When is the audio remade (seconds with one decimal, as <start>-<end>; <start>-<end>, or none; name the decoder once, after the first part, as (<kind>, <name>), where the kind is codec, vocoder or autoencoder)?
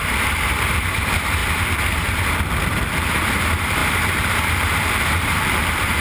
0.0-1.4 (vocoder, BigVGAN v2); 2.7-6.0